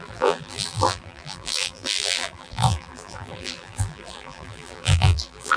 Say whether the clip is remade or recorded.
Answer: remade